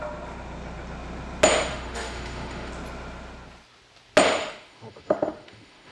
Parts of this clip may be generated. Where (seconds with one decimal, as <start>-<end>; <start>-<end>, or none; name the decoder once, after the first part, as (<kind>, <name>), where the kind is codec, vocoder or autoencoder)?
1.7-2.7 (autoencoder, DAC-VAE); 4.4-5.9